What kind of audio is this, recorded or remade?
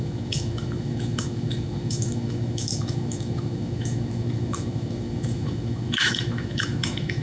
remade